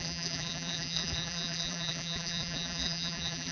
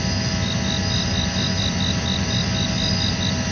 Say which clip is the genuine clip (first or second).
second